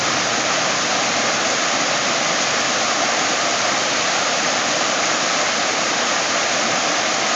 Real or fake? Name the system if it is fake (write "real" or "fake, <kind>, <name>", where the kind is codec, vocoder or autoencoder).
real